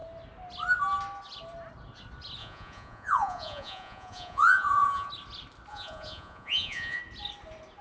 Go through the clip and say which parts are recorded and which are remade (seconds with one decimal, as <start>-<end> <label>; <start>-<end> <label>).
0.0-2.4 recorded; 2.4-5.1 remade; 5.1-5.7 recorded; 5.7-7.0 remade; 7.0-7.8 recorded